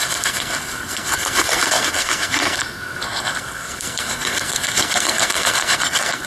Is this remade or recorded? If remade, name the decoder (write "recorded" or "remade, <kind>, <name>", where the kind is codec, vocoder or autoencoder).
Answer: remade, codec, SNAC